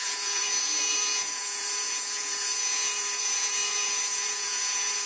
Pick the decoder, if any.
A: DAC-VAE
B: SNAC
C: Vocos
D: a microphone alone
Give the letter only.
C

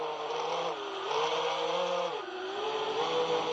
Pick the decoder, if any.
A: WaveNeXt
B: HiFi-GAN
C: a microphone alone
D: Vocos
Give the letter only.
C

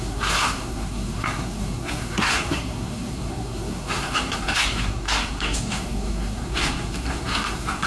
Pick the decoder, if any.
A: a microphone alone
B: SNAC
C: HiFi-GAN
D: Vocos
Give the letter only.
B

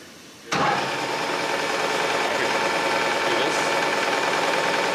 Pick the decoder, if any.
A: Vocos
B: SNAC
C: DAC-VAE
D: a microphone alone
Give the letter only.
D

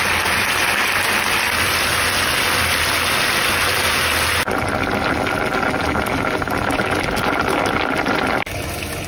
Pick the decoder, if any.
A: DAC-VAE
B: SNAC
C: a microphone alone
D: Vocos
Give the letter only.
C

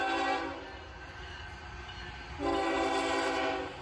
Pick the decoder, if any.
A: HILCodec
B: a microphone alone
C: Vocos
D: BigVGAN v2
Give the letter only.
B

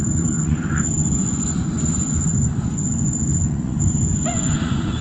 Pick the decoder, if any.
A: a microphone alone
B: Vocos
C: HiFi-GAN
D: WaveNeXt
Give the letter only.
B